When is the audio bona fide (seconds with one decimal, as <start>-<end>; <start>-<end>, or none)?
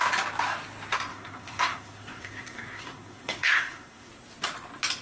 0.0-1.1; 4.1-5.0